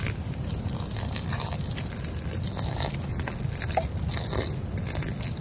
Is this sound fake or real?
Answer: real